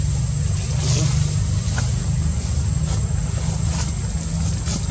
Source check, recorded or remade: recorded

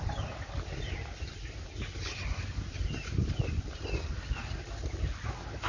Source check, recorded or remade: recorded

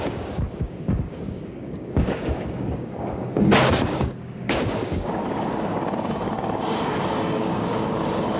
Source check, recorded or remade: remade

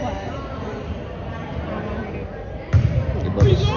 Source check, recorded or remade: recorded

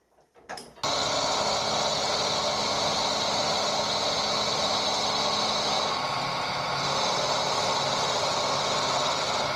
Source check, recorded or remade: recorded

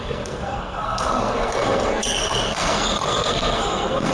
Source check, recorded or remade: remade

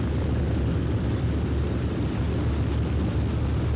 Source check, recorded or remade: recorded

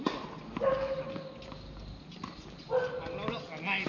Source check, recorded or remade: recorded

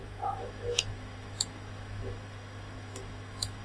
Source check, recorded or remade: remade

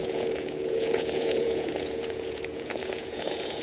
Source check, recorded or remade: remade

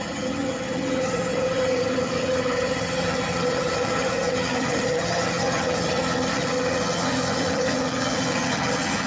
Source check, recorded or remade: remade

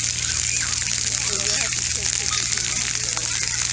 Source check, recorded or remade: recorded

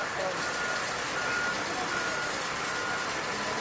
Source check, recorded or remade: recorded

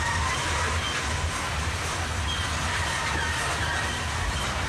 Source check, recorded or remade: recorded